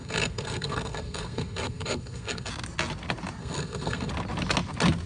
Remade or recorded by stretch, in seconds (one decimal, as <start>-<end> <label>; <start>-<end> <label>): 0.0-2.5 remade; 2.5-3.4 recorded; 3.4-4.1 remade; 4.1-5.1 recorded